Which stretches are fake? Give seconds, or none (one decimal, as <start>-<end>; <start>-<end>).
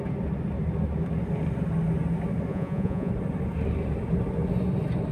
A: 2.5-3.1